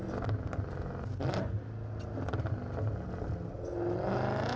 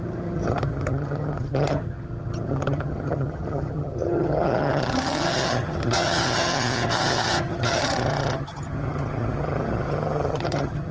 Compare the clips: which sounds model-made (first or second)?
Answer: second